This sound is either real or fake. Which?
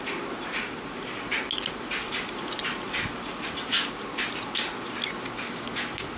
real